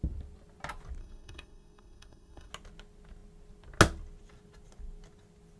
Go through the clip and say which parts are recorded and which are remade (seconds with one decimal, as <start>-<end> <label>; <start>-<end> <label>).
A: 0.0-1.0 recorded; 1.0-2.5 remade; 2.5-5.6 recorded